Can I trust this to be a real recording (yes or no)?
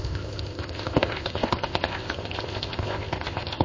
no